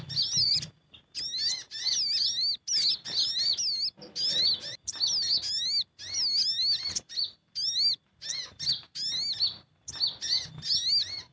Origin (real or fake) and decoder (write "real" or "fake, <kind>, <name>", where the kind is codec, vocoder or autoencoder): real